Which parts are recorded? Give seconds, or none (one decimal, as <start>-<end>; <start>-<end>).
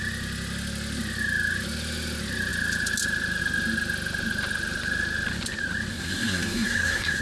0.0-5.9